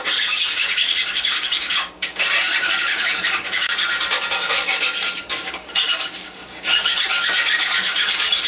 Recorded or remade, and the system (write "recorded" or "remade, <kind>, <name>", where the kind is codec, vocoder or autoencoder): remade, codec, DAC